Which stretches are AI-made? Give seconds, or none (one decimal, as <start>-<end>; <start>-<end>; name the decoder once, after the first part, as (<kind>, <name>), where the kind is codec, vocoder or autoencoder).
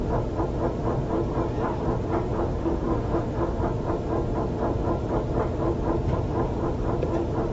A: 2.5-3.6 (autoencoder, DAC-VAE)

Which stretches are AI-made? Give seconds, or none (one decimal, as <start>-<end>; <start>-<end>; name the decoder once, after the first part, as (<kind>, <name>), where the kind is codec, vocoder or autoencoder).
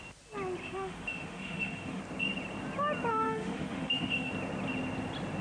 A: 0.6-2.0 (autoencoder, DAC-VAE); 3.1-4.3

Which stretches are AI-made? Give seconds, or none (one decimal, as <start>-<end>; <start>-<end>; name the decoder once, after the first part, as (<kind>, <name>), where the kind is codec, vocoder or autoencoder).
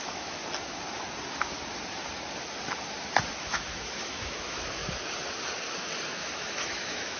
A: 0.0-0.4 (autoencoder, DAC-VAE); 3.3-4.8; 6.1-7.2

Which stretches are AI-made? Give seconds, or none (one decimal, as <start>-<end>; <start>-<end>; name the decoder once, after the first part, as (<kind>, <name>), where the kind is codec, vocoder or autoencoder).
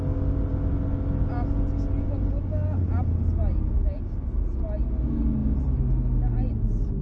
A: none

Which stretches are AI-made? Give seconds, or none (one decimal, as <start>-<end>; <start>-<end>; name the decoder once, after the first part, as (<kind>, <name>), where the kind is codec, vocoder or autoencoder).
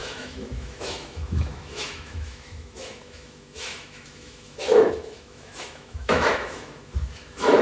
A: 0.0-7.6 (autoencoder, DAC-VAE)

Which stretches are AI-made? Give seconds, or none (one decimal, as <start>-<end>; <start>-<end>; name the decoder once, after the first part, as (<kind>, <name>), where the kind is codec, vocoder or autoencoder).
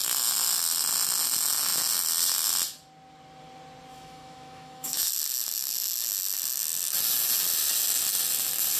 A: 3.9-5.1 (autoencoder, DAC-VAE)